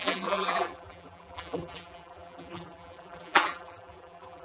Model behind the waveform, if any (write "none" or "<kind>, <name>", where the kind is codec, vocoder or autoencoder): vocoder, BigVGAN v2